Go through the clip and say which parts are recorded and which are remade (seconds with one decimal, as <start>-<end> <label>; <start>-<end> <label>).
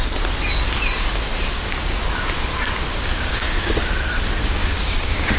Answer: 0.0-2.9 recorded; 2.9-3.6 remade; 3.6-4.6 recorded; 4.6-5.4 remade